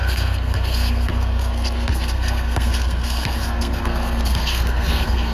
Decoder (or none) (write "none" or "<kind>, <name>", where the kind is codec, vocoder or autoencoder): codec, SNAC